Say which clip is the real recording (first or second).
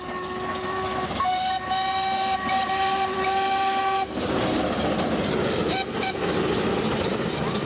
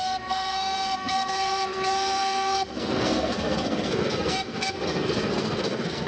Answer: first